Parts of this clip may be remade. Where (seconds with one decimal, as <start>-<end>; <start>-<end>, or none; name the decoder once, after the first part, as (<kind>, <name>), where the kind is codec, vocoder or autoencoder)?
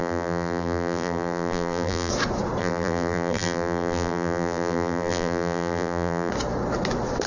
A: 0.0-2.1 (vocoder, BigVGAN v2); 2.6-6.3